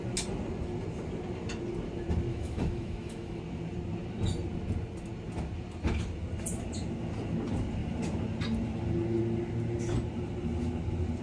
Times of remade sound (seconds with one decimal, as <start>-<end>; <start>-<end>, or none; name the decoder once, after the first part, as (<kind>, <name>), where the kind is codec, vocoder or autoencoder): 2.3-3.4 (autoencoder, DAC-VAE)